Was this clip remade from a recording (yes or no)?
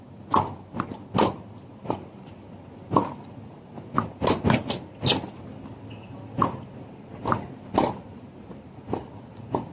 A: no